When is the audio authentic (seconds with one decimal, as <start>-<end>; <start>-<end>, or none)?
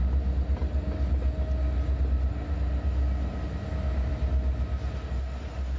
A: 0.0-5.8